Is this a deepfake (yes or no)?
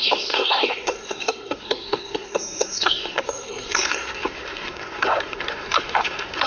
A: yes